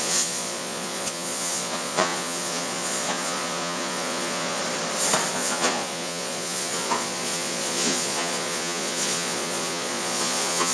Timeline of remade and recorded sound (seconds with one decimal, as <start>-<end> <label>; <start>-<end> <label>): 0.0-4.6 remade; 4.6-5.3 recorded; 5.3-10.7 remade